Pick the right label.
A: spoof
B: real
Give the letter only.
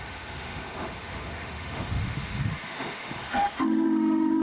A